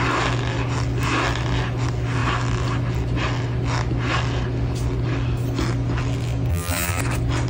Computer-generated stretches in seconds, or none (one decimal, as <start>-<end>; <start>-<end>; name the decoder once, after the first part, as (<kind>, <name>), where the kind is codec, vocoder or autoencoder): 6.5-7.0 (vocoder, BigVGAN v2)